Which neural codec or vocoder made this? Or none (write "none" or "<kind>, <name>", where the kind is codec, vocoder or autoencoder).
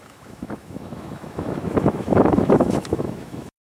autoencoder, DAC-VAE